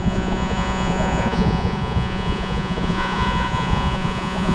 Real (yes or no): no